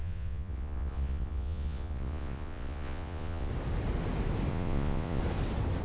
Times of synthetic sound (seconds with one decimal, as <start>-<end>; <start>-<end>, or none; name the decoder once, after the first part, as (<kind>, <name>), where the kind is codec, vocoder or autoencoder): 0.0-3.5 (vocoder, Vocos); 4.5-5.2